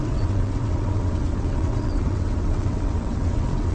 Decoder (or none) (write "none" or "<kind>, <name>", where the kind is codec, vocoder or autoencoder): vocoder, WaveNeXt